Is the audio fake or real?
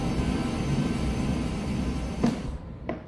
fake